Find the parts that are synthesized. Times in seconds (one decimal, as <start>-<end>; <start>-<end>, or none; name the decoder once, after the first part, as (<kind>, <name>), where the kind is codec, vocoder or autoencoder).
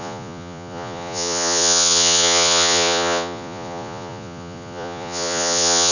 0.0-5.9 (vocoder, Vocos)